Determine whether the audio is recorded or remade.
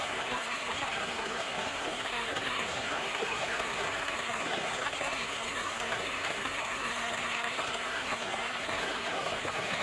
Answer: remade